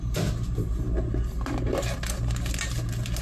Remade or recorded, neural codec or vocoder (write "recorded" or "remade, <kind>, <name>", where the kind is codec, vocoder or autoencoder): recorded